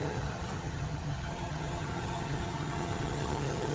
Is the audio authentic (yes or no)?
no